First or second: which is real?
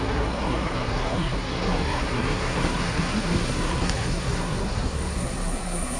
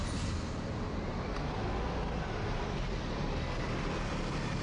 second